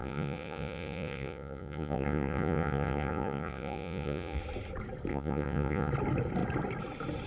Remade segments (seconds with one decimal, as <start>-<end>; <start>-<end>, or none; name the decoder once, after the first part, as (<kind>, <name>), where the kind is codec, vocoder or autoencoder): 0.0-4.4 (vocoder, Vocos); 5.1-5.9